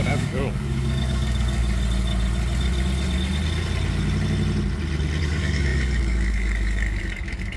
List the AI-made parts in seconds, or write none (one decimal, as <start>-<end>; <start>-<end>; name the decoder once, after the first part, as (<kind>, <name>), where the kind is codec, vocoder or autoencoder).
0.0-1.6 (codec, DAC); 5.2-7.6